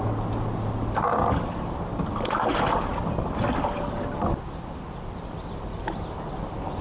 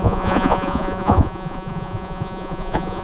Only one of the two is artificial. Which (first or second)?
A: second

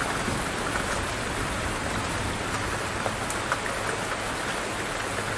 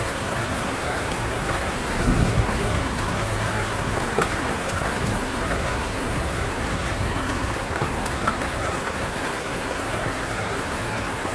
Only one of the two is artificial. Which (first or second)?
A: second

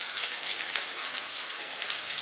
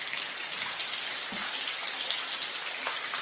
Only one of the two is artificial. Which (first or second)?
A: first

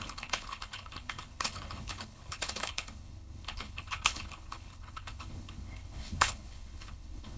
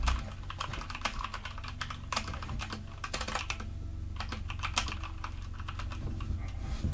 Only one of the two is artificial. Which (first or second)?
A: first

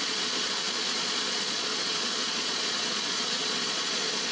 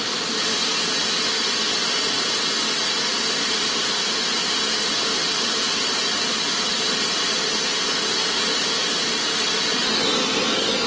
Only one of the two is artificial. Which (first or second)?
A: first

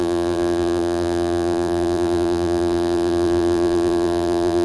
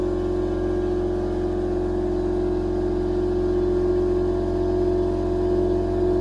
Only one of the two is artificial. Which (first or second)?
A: first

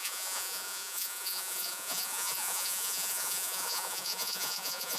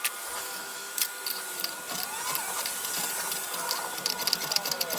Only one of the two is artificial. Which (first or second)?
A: first